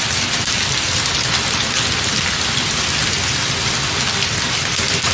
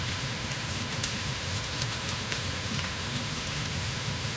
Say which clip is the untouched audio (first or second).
first